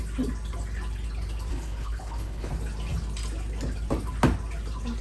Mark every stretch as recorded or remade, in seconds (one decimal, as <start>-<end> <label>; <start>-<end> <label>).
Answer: 0.0-1.5 recorded; 1.5-2.5 remade; 2.5-5.0 recorded